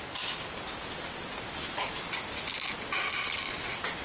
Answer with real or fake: real